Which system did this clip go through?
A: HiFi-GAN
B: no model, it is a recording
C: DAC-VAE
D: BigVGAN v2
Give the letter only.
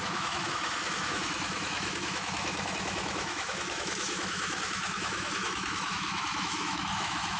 C